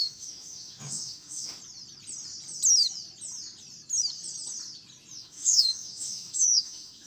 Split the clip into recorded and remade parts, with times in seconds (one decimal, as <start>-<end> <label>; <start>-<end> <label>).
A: 0.0-1.6 remade; 1.6-5.2 recorded; 5.2-7.1 remade